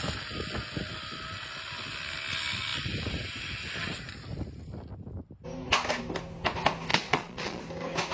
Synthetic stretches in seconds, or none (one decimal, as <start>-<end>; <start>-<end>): 6.9-7.6